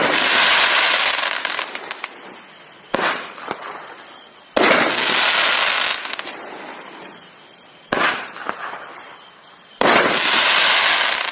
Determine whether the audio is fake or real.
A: real